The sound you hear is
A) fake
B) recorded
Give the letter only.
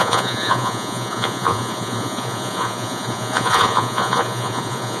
A